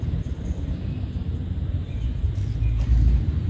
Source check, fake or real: real